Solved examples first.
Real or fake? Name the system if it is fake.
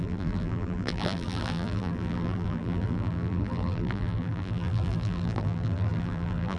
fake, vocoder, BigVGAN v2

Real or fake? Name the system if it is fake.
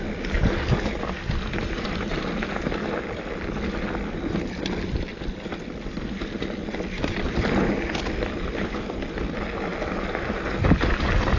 real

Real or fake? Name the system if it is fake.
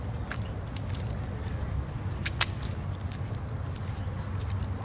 real